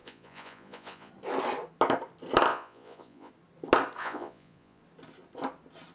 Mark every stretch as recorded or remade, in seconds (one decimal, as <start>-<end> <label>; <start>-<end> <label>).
0.0-1.1 remade; 1.1-2.5 recorded; 2.5-3.3 remade; 3.3-4.0 recorded; 4.0-4.8 remade; 4.8-5.9 recorded